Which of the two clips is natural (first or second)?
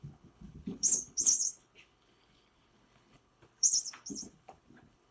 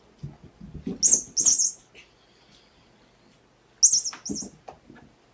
second